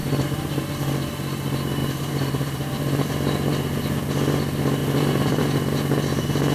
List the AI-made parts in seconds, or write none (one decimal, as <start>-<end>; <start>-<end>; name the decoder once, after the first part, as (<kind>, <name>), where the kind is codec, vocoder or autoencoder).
0.0-0.7 (vocoder, BigVGAN v2); 1.8-3.1; 4.8-5.4